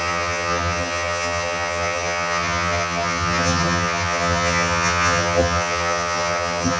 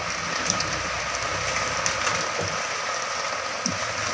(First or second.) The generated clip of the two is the first